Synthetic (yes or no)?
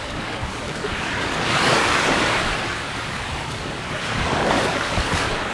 yes